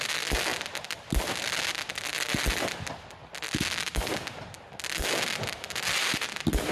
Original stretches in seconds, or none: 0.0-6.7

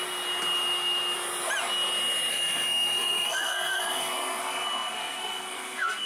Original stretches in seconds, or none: 0.0-2.3

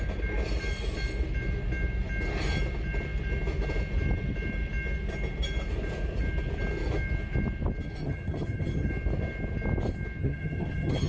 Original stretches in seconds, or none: 0.0-8.0; 8.9-10.2

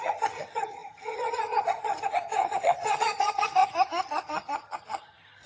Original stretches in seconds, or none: none

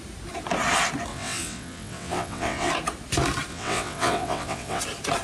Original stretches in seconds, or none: 0.0-1.1; 2.7-3.5; 4.8-5.2

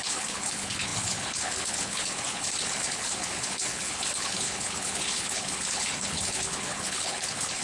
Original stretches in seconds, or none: none